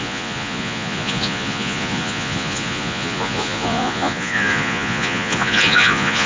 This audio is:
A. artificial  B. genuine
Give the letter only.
A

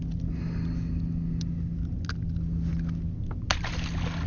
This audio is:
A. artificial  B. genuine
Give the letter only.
B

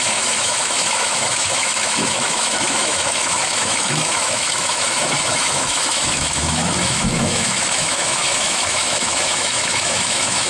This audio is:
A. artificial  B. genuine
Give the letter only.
A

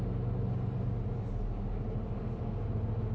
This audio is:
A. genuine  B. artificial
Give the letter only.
A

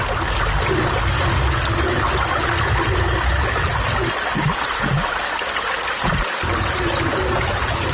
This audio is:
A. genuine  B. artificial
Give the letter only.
A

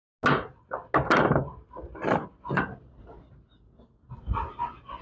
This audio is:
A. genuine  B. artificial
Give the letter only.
A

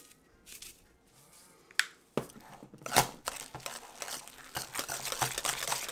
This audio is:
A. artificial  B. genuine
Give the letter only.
B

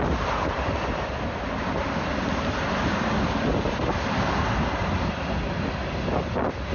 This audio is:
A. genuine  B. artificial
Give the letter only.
A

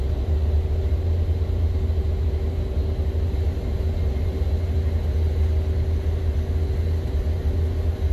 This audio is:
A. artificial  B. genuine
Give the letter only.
B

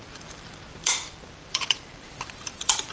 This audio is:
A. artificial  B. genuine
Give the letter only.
A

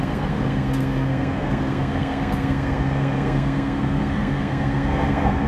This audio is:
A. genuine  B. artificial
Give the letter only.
B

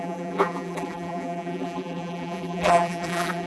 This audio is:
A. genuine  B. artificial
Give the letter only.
B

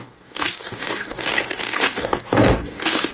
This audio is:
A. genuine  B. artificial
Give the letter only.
B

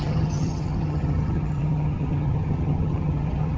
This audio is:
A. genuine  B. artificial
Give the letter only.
B